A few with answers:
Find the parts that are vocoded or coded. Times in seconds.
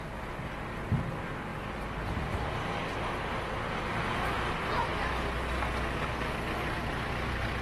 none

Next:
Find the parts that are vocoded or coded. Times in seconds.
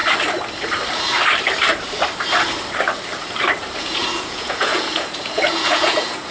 3.8-6.3 (vocoder, Vocos)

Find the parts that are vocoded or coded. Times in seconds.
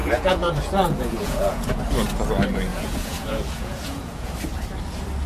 0.0-1.8 (vocoder, Vocos); 2.7-4.3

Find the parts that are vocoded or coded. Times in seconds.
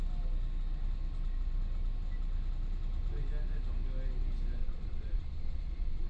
4.6-6.1 (vocoder, Vocos)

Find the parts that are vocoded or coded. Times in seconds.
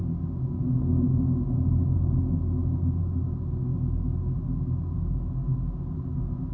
none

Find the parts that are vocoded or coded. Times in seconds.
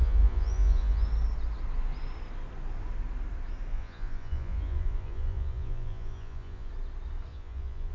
0.0-1.1 (vocoder, Vocos); 3.7-6.7; 7.3-7.9